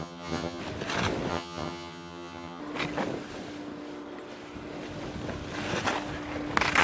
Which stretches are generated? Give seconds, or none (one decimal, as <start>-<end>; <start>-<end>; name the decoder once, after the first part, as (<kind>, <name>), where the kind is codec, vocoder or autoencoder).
0.0-0.6 (vocoder, HiFi-GAN); 1.3-2.6